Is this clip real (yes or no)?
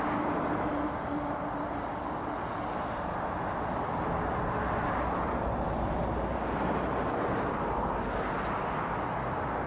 yes